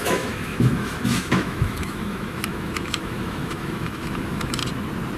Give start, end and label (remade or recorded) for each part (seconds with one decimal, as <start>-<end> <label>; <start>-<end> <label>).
0.0-4.6 remade; 4.6-5.2 recorded